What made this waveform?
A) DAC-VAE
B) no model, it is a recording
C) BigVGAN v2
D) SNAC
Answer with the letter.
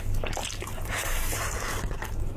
B